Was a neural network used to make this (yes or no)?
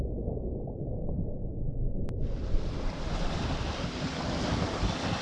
no